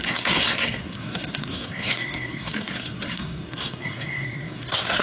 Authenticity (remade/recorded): remade